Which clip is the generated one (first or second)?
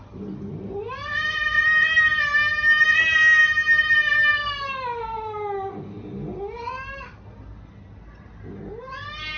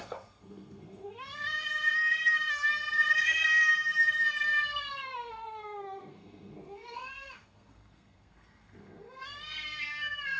second